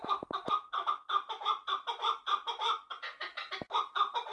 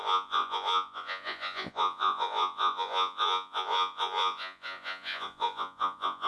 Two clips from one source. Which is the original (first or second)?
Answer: first